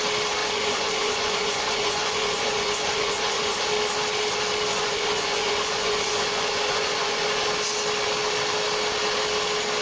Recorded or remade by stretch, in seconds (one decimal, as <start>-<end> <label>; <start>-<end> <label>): 0.0-0.4 recorded; 0.4-3.6 remade; 3.6-4.7 recorded; 4.7-7.4 remade; 7.4-9.8 recorded